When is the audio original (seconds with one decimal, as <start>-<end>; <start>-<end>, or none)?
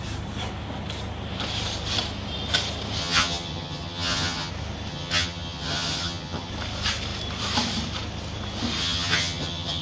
0.0-3.0; 4.5-4.9; 6.5-8.8